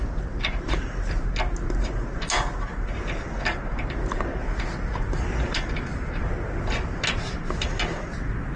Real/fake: real